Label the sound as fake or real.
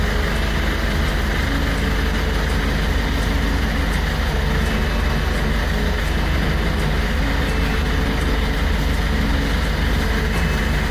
real